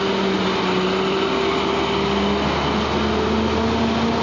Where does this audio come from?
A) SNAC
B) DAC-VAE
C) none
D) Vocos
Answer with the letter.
C